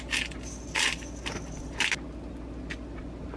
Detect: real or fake real